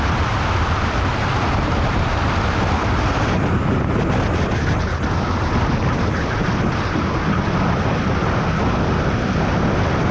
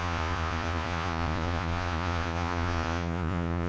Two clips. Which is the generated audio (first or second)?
second